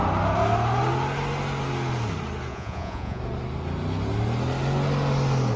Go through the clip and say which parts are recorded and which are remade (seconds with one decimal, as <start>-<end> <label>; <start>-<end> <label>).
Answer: 0.0-2.5 recorded; 2.5-3.2 remade; 3.2-5.6 recorded